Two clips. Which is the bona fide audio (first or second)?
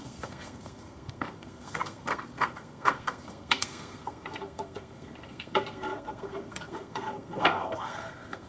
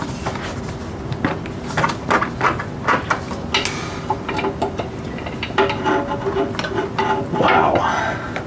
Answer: second